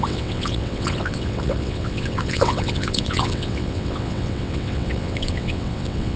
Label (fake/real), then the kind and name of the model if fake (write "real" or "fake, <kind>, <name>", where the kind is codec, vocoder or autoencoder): fake, vocoder, WaveNeXt